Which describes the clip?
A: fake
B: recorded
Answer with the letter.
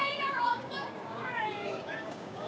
A